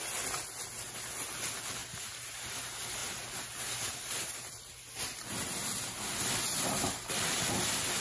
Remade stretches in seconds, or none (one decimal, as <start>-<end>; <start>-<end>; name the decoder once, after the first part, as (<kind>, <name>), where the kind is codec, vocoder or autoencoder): 1.8-2.6 (vocoder, BigVGAN v2); 3.0-4.6